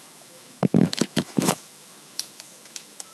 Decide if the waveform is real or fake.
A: fake